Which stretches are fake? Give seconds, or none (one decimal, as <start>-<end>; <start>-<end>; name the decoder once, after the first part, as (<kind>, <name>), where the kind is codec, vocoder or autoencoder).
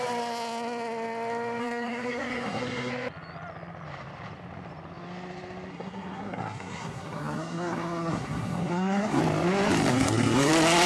1.6-2.9 (codec, SNAC); 5.7-9.2; 9.9-10.5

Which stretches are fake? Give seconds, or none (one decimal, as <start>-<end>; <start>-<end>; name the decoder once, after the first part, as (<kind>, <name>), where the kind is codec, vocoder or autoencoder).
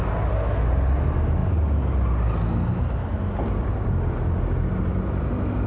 none